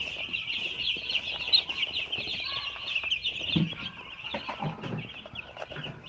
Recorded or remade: recorded